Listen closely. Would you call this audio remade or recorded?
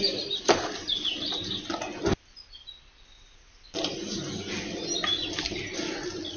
recorded